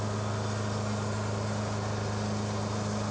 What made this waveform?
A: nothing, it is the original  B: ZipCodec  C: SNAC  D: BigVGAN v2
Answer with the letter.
A